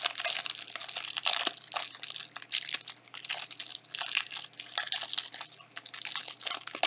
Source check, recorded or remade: recorded